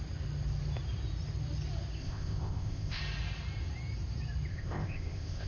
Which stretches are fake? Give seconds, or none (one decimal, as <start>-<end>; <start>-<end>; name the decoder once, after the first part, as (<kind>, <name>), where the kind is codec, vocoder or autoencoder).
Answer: 2.0-3.0 (codec, ZipCodec); 4.5-5.5